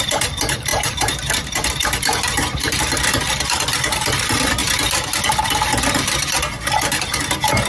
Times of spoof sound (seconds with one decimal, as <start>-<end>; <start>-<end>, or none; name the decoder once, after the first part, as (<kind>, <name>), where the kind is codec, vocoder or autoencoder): 0.7-1.3 (vocoder, BigVGAN v2); 2.1-3.1